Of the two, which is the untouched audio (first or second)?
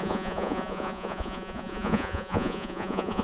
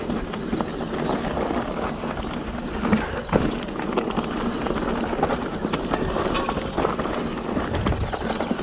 second